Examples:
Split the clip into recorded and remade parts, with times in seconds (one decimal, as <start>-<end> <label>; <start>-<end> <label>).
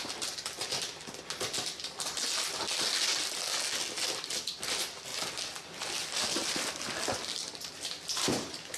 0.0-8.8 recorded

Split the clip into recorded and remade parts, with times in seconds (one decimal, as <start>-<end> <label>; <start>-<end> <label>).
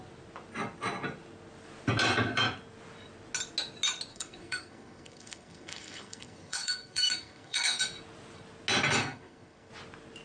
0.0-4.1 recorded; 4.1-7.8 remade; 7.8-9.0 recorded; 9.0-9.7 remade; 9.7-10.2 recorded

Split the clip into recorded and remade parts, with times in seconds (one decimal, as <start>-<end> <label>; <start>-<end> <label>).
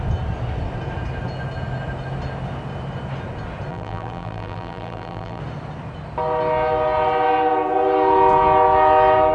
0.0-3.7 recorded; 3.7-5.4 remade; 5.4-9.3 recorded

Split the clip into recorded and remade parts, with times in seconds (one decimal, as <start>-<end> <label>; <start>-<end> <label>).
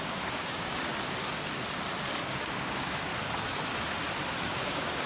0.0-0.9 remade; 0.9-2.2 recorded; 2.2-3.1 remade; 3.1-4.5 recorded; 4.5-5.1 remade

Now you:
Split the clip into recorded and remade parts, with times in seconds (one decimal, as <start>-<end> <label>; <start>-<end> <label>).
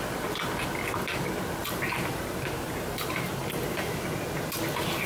0.0-1.6 recorded; 1.6-3.3 remade; 3.3-5.1 recorded